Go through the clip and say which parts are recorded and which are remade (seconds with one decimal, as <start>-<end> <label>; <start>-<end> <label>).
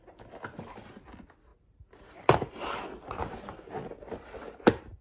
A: 0.0-1.5 recorded; 1.5-3.6 remade; 3.6-5.0 recorded